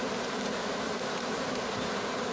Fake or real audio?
fake